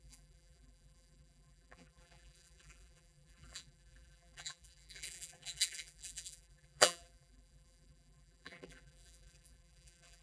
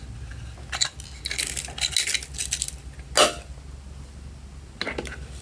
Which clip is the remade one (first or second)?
first